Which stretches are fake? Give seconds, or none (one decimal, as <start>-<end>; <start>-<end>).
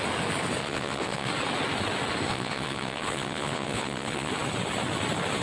0.6-1.3; 2.3-4.3